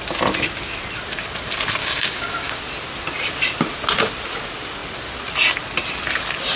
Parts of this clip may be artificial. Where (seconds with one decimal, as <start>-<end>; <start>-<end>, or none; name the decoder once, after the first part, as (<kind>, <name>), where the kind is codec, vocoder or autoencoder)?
1.8-2.6 (codec, DAC)